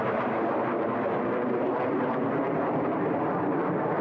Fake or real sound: real